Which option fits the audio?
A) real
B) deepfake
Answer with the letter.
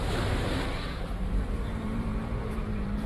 B